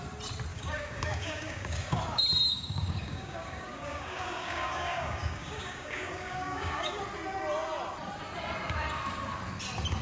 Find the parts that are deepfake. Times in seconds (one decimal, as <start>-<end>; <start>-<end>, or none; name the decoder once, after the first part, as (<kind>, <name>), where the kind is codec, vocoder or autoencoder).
0.5-2.0 (codec, DAC); 2.5-7.0